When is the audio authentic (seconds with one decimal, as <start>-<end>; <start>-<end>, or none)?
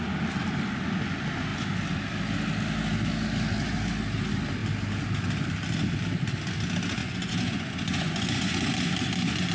0.0-7.0; 8.7-9.5